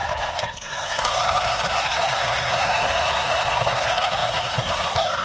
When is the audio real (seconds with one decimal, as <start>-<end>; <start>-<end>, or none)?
none